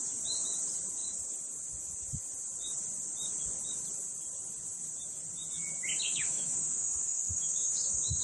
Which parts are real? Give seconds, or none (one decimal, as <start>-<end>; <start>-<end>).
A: 0.0-6.1